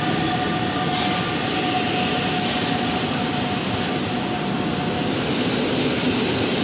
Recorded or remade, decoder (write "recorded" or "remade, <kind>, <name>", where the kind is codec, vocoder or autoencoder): recorded